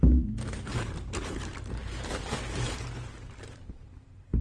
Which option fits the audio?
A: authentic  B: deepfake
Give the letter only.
B